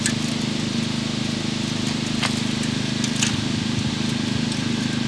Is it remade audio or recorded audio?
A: recorded